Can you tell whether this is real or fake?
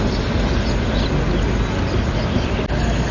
real